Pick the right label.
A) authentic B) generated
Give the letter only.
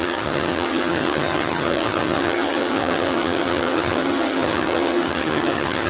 B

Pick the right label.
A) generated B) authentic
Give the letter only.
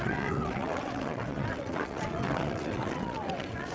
A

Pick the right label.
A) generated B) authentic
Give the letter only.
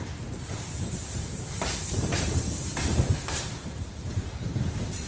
A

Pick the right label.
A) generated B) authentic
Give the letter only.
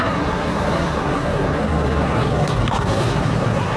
A